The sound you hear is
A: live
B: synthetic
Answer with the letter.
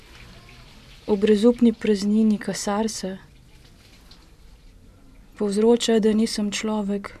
A